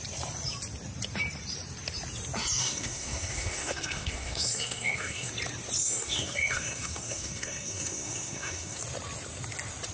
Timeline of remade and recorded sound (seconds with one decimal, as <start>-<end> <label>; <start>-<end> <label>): 0.0-2.6 recorded; 2.6-5.3 remade; 5.3-5.8 recorded; 5.8-8.8 remade; 8.8-9.9 recorded